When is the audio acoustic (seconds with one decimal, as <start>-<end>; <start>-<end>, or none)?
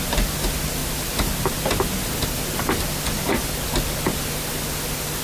0.0-5.2